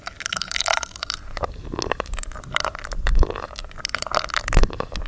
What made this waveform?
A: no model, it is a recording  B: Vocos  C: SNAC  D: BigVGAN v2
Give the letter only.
A